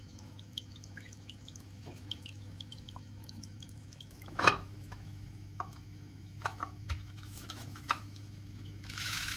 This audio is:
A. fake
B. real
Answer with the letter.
A